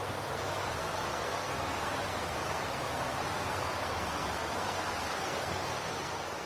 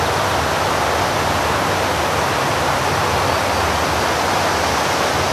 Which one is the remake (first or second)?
first